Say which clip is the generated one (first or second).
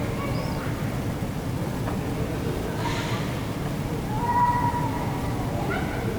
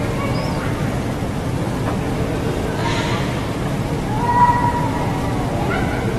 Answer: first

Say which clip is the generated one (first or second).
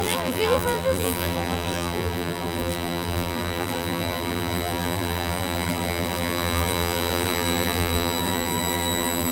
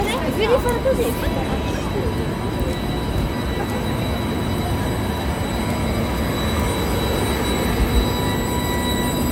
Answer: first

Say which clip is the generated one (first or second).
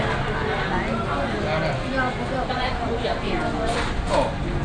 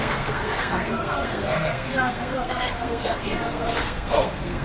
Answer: second